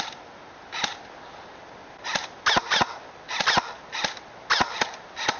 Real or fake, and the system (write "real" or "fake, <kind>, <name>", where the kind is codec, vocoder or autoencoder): real